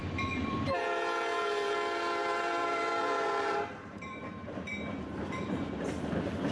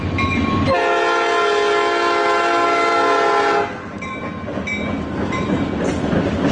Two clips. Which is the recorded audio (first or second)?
second